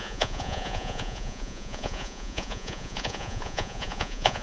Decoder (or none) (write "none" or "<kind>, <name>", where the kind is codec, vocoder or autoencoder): vocoder, Vocos